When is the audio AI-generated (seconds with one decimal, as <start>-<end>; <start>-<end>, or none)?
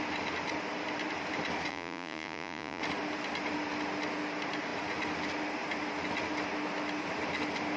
1.7-2.8